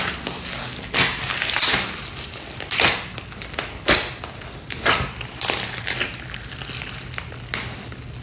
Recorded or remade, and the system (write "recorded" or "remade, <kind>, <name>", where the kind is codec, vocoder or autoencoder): recorded